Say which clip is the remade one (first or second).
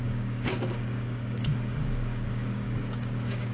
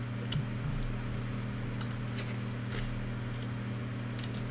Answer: first